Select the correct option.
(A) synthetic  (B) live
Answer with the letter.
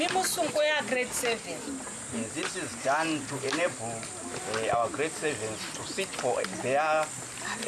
B